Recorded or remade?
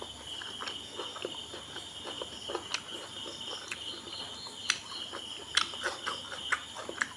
recorded